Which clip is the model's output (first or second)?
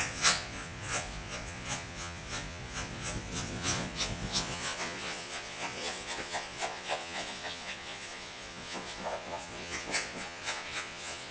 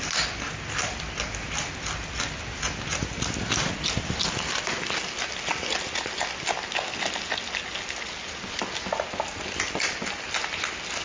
first